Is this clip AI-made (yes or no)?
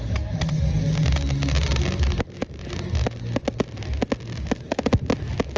no